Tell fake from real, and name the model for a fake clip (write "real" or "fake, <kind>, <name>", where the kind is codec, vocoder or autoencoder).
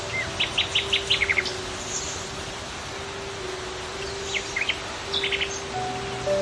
real